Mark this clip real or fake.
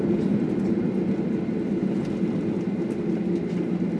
real